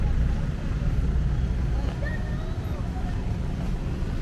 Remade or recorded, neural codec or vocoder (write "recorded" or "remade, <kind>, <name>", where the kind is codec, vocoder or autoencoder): recorded